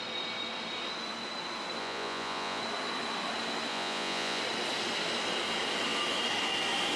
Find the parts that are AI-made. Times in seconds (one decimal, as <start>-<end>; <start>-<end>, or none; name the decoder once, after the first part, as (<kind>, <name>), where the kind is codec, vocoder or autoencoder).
1.8-2.6 (vocoder, Vocos); 3.7-4.4

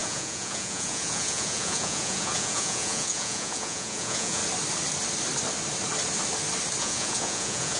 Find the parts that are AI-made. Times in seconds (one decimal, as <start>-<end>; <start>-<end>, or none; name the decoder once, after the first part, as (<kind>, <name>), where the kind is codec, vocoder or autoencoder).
0.0-4.4 (vocoder, Vocos); 6.8-7.8

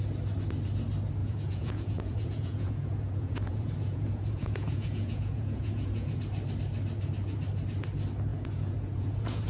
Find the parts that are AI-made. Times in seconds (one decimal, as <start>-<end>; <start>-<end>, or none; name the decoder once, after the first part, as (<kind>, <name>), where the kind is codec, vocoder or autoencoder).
1.2-6.2 (vocoder, Vocos); 8.3-9.5

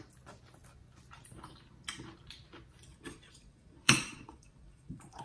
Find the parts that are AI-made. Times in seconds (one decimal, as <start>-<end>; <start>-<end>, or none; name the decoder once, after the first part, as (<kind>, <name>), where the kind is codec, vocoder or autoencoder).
2.9-5.2 (vocoder, Vocos)

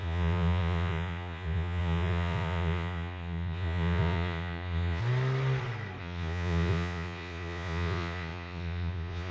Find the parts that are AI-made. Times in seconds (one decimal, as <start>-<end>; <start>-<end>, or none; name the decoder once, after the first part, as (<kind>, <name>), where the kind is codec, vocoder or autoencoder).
0.0-5.0 (vocoder, Vocos); 6.0-9.3

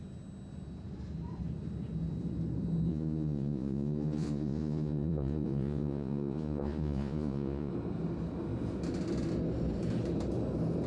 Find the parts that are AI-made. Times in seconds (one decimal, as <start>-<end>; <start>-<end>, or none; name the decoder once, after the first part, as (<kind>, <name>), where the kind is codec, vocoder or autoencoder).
2.9-7.7 (vocoder, Vocos)

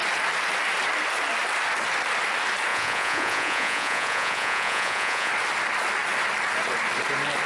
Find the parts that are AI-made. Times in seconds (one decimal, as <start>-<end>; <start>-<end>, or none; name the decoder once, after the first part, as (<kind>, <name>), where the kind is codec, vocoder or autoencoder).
2.7-5.3 (vocoder, Vocos)

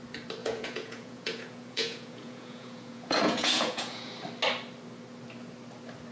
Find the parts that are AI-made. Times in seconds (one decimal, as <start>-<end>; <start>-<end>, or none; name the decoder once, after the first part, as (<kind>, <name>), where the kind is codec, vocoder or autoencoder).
0.4-4.1 (vocoder, Vocos)